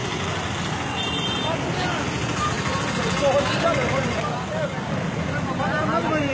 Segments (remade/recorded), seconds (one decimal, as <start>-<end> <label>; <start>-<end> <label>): 0.0-6.3 recorded